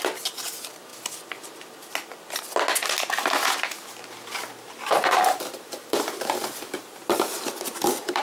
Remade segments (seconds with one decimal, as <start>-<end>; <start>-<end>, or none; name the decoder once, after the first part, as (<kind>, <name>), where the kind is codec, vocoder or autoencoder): 4.4-8.2 (vocoder, BigVGAN v2)